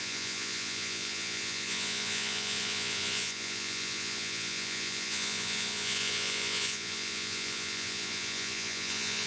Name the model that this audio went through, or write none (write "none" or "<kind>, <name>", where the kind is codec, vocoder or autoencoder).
vocoder, Vocos